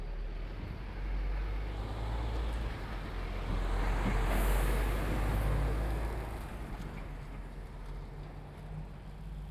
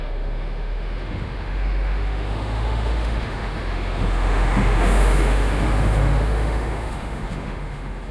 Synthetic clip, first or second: second